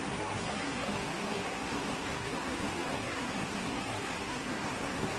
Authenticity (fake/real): fake